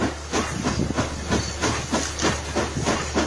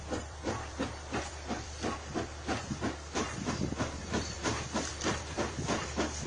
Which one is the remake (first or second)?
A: second